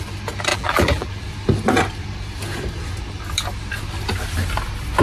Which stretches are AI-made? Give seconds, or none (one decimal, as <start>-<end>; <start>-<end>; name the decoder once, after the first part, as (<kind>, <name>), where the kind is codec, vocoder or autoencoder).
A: 0.5-1.1 (vocoder, BigVGAN v2)